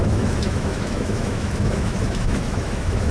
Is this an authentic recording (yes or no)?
no